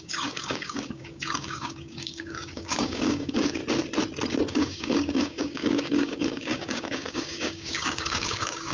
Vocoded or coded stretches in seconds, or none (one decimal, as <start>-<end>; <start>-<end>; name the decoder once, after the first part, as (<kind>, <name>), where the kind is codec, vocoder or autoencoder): 0.0-3.6 (codec, DAC); 4.5-8.7